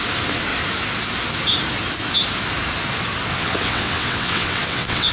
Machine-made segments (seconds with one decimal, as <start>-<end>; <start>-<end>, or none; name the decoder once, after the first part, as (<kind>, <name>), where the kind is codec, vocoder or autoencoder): 3.3-5.1 (vocoder, WaveNeXt)